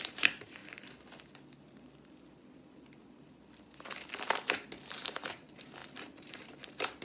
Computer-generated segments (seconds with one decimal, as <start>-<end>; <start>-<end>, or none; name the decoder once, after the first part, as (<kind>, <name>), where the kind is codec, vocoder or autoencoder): 0.0-0.6 (vocoder, BigVGAN v2); 4.8-7.0